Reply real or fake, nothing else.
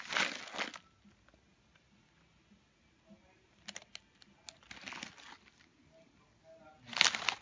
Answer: real